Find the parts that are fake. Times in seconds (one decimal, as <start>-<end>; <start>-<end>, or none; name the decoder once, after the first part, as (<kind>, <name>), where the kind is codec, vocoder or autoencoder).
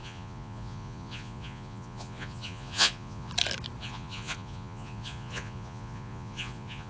0.0-3.3 (vocoder, Vocos); 3.8-6.9